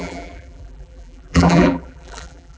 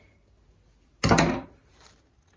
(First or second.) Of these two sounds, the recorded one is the second